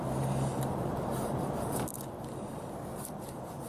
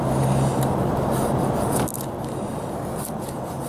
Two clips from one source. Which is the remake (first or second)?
first